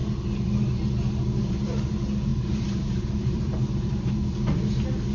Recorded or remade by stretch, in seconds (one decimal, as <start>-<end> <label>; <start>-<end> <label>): 0.0-2.3 recorded; 2.3-4.1 remade; 4.1-5.1 recorded